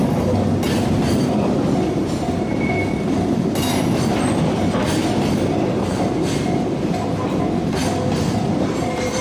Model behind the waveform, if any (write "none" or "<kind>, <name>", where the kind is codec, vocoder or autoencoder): none